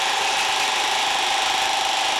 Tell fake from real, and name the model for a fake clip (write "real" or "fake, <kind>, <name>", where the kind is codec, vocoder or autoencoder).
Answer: real